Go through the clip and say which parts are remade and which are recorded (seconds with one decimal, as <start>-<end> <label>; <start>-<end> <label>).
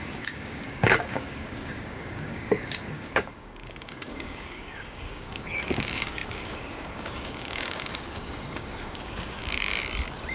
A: 0.0-9.7 remade; 9.7-10.3 recorded